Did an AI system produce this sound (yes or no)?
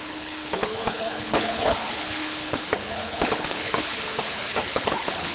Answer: yes